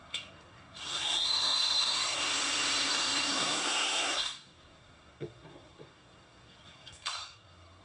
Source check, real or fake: fake